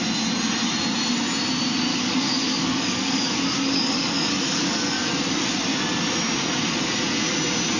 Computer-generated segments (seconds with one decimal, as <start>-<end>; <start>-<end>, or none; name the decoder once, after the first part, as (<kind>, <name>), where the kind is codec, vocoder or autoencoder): 1.9-5.1 (codec, DAC)